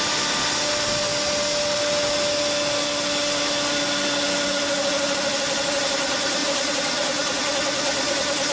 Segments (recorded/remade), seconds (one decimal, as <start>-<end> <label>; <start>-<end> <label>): 0.0-6.4 recorded; 6.4-7.4 remade; 7.4-8.5 recorded